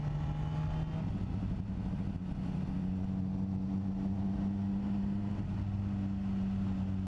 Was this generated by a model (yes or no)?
no